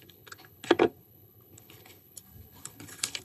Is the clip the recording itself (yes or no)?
no